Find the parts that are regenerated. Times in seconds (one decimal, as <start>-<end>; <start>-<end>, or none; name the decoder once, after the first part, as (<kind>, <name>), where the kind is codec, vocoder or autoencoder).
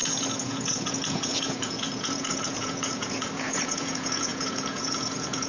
0.0-5.5 (vocoder, Vocos)